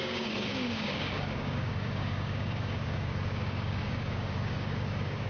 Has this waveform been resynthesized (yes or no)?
yes